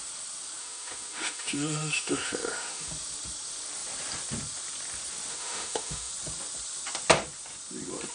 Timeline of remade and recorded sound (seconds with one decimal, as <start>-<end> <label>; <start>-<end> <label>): 0.0-0.6 recorded; 0.6-2.9 remade; 2.9-5.3 recorded; 5.3-6.1 remade; 6.1-8.1 recorded